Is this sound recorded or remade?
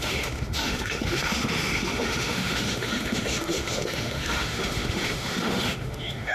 remade